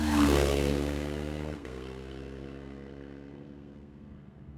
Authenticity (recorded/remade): remade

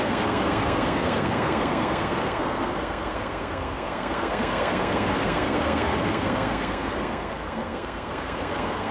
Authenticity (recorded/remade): remade